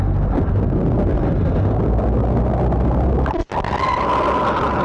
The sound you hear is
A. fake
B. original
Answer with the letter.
B